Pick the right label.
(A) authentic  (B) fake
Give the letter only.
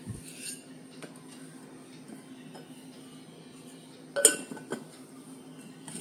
A